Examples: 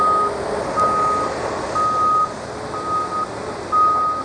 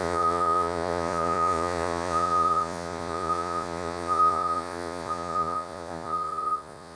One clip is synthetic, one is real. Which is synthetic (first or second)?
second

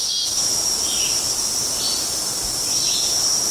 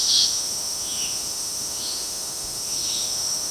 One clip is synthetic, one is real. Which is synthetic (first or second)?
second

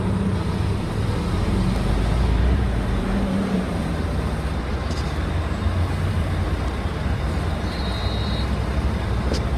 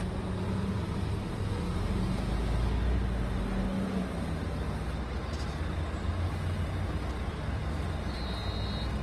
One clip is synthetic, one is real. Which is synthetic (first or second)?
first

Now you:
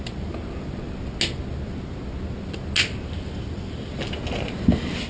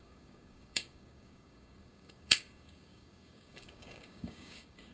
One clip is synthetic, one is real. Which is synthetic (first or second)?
second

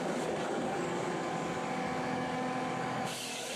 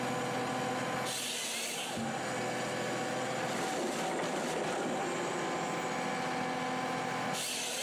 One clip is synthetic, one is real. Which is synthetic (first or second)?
first